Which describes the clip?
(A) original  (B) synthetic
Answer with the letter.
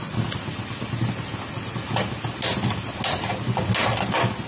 A